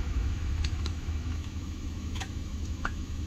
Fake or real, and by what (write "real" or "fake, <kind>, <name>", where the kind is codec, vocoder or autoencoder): fake, autoencoder, DAC-VAE